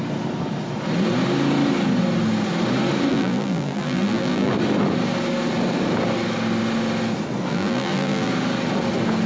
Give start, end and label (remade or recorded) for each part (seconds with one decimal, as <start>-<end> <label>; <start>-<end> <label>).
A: 0.0-3.1 recorded; 3.1-4.5 remade; 4.5-7.5 recorded; 7.5-8.3 remade; 8.3-9.3 recorded